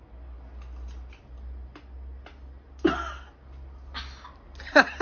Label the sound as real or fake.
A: real